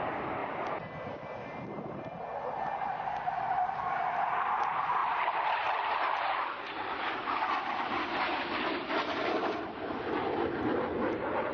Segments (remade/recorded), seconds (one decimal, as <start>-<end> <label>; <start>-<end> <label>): 0.0-5.0 recorded; 5.0-8.9 remade; 8.9-11.5 recorded